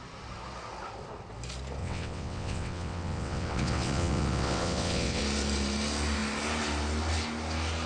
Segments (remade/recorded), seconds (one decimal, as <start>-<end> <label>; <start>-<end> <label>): 0.0-1.8 recorded; 1.8-5.2 remade; 5.2-7.9 recorded